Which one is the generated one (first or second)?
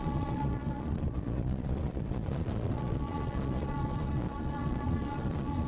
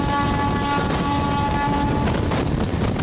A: first